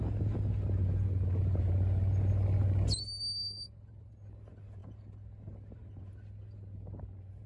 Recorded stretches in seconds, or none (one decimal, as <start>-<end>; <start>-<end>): 0.0-3.4; 4.1-7.5